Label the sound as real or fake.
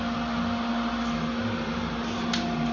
real